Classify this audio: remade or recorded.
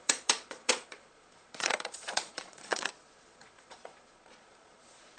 remade